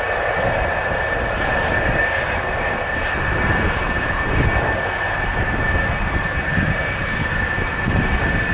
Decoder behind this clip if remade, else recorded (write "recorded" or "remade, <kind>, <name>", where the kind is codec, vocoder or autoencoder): recorded